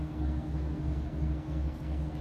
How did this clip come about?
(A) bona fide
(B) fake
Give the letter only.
B